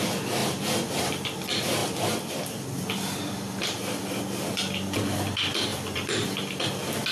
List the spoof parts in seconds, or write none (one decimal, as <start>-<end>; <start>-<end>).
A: 0.4-1.1; 1.8-4.2; 5.7-6.6